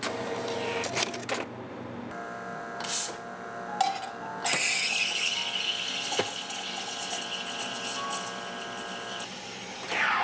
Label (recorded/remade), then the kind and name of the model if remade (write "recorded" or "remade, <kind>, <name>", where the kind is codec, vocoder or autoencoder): recorded